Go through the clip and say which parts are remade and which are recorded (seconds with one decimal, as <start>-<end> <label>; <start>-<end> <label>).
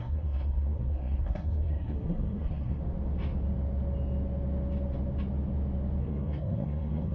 0.0-2.8 remade; 2.8-6.0 recorded; 6.0-7.1 remade